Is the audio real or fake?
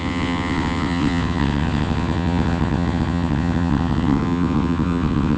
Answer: fake